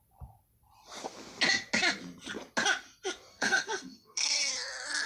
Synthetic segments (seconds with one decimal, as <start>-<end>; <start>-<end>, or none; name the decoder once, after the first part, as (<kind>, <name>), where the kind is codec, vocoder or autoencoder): 3.3-4.5 (codec, SNAC)